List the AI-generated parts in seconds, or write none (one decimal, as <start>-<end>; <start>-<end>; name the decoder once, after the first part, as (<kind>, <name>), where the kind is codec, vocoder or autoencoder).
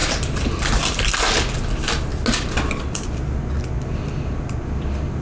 0.0-1.1 (vocoder, BigVGAN v2)